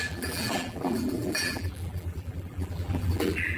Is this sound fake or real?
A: fake